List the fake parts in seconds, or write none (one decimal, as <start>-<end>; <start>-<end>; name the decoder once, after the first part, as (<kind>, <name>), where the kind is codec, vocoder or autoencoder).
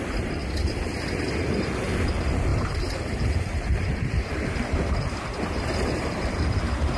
2.5-7.0 (vocoder, BigVGAN v2)